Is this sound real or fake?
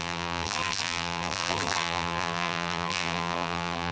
fake